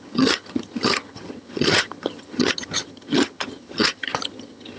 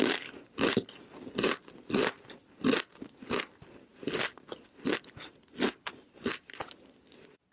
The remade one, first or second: first